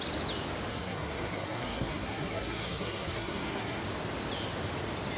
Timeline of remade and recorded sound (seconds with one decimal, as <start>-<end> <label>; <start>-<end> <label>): 0.0-0.7 recorded; 0.7-3.8 remade; 3.8-5.2 recorded